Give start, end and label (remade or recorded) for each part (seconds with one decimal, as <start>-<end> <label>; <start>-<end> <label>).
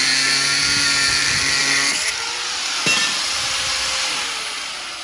0.0-5.0 recorded